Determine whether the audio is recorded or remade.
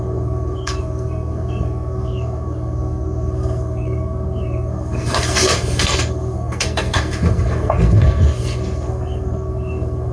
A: remade